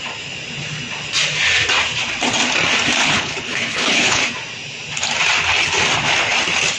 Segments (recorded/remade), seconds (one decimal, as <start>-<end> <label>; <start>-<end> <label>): 0.0-3.0 recorded; 3.0-4.2 remade; 4.2-6.8 recorded